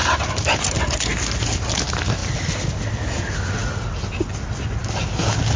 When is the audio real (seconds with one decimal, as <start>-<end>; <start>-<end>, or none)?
0.0-5.6